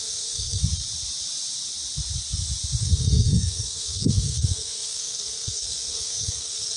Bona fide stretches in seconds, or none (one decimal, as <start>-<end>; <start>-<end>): 0.6-2.8